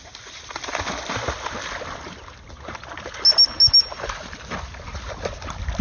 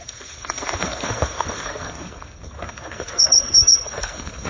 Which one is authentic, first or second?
first